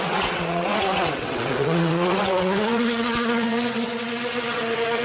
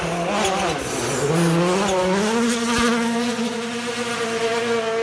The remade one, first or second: first